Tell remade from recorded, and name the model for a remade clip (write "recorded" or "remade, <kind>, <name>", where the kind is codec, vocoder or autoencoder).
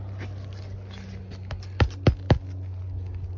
recorded